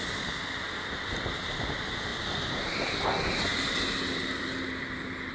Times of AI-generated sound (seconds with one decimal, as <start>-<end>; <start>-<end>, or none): 2.1-2.7